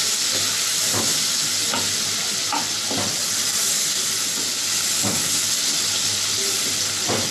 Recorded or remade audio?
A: recorded